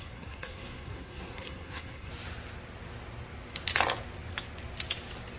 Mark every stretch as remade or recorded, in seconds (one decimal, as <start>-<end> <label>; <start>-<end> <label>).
0.0-2.1 remade; 2.1-5.4 recorded